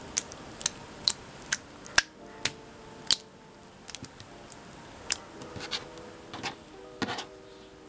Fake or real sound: real